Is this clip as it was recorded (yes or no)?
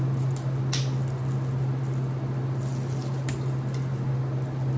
yes